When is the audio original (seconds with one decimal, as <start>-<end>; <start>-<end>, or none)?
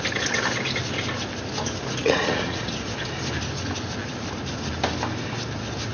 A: 0.0-2.0; 2.7-5.9